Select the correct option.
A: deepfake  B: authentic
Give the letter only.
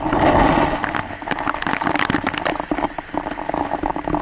B